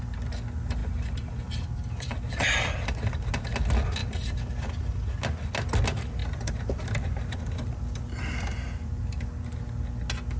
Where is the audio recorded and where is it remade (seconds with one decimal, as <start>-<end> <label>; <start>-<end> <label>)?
0.0-0.8 recorded; 0.8-2.9 remade; 2.9-4.0 recorded; 4.0-5.1 remade; 5.1-6.2 recorded; 6.2-9.0 remade; 9.0-10.4 recorded